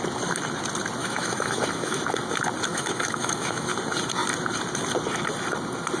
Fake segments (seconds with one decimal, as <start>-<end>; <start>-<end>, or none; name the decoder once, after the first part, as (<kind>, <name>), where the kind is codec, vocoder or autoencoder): 1.0-2.0 (autoencoder, DAC-VAE); 2.7-3.7